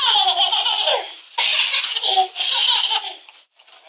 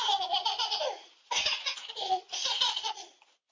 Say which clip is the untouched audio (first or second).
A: first